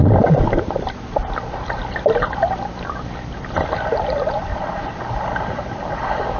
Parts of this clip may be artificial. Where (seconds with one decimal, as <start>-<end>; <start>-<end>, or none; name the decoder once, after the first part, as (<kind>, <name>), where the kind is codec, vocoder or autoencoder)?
4.5-5.0 (vocoder, Vocos)